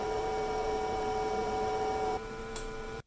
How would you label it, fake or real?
fake